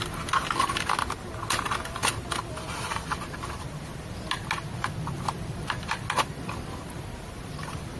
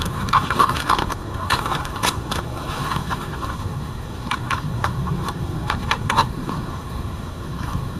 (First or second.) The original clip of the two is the first